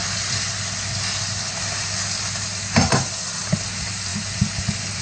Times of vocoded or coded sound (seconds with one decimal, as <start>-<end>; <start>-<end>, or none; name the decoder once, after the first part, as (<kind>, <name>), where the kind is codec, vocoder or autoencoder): none